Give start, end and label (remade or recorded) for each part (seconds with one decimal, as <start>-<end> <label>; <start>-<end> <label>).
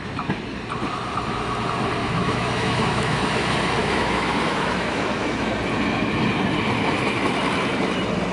0.0-2.0 recorded; 2.0-3.2 remade; 3.2-3.8 recorded; 3.8-5.5 remade; 5.5-8.3 recorded